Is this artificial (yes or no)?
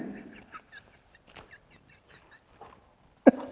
no